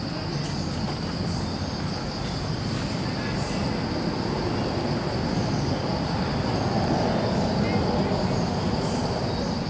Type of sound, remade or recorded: recorded